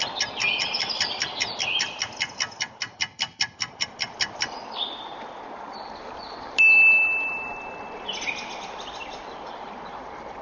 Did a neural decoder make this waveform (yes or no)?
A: no